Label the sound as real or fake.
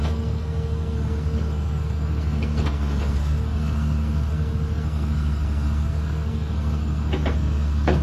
fake